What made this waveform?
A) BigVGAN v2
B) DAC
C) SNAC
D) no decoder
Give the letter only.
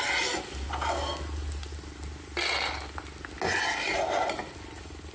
D